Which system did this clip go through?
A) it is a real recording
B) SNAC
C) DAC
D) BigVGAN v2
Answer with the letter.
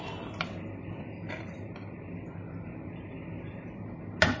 A